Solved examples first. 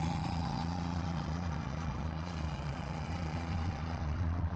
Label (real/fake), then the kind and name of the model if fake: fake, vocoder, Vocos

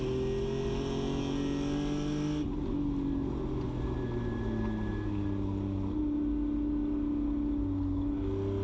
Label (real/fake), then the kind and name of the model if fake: real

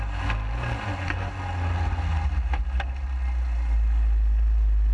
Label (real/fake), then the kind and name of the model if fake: real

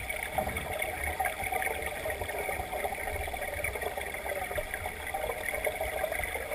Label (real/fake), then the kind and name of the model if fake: real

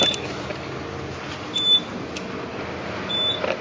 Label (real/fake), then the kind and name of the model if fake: real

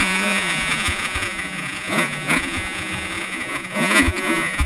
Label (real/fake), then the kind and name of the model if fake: fake, vocoder, Vocos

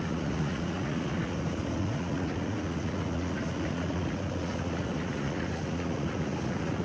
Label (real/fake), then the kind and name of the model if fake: fake, vocoder, Vocos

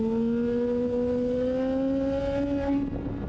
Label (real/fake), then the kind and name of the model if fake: real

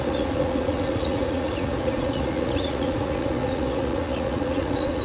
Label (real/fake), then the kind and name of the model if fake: fake, vocoder, Vocos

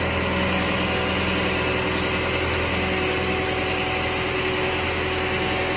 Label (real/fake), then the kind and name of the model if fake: real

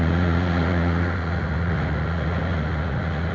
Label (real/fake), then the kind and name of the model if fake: fake, vocoder, Vocos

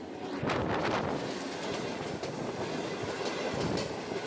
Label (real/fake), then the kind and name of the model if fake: real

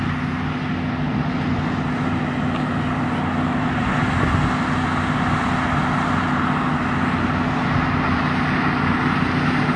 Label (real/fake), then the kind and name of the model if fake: real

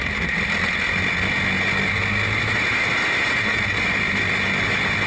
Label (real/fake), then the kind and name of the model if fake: real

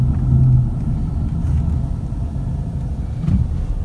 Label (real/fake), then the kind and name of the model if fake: real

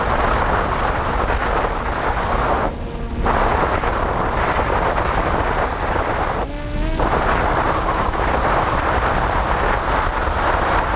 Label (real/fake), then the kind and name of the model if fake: real